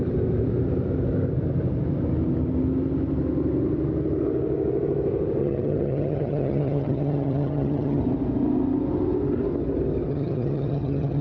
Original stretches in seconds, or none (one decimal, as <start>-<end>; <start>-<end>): 0.0-5.4; 8.0-10.1